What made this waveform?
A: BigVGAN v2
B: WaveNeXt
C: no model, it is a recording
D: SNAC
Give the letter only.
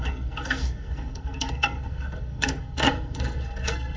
D